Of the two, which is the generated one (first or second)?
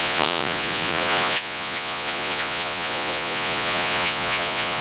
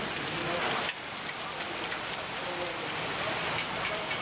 first